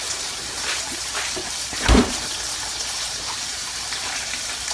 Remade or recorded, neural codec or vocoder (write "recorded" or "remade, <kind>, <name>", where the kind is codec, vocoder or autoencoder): remade, vocoder, BigVGAN v2